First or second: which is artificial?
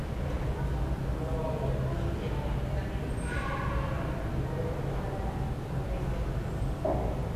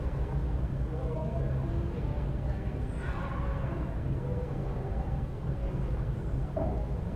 second